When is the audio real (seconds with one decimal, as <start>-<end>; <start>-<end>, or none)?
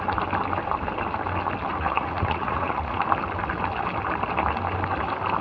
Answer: 0.0-1.7; 3.0-5.4